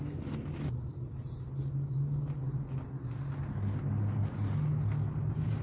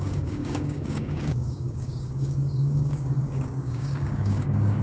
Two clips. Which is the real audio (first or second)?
first